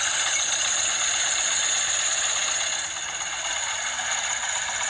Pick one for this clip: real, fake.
real